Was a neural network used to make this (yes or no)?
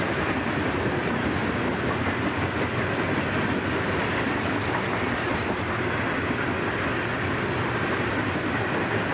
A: no